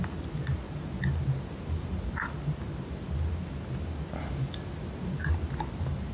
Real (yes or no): yes